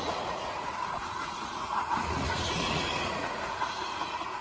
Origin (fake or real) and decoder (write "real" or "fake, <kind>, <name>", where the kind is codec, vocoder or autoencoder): fake, vocoder, Vocos